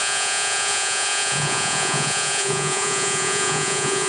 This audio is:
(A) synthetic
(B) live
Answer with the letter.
A